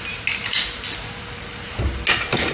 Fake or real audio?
real